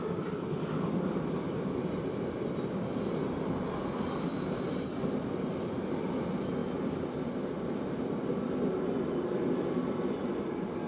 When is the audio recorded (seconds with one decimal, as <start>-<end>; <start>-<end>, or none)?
0.0-10.9